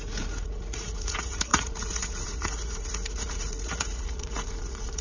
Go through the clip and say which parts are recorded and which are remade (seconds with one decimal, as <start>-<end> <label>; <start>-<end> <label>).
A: 0.0-5.0 remade